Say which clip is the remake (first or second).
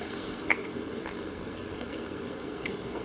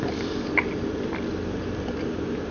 first